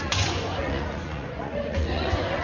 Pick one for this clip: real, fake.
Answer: fake